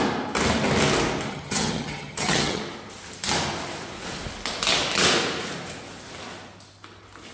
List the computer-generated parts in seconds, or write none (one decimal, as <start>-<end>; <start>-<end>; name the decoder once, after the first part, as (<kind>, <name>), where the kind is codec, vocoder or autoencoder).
1.3-2.6 (vocoder, HiFi-GAN)